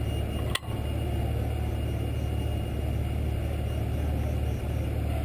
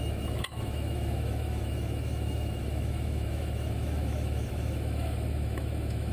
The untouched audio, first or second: first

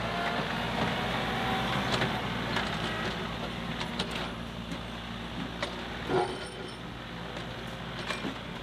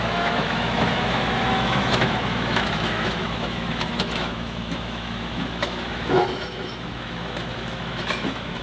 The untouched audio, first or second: first